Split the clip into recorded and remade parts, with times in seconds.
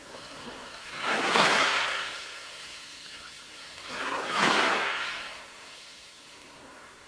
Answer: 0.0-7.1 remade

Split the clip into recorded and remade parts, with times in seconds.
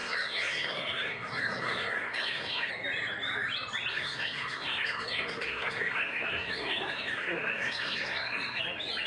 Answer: 0.0-2.7 remade; 2.7-3.9 recorded; 3.9-8.6 remade; 8.6-9.1 recorded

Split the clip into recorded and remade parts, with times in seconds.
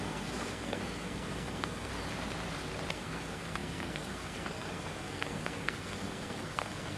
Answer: 0.0-1.9 remade; 1.9-2.9 recorded; 2.9-7.0 remade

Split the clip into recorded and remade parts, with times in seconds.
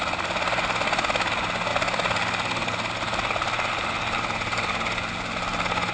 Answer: 0.0-5.9 recorded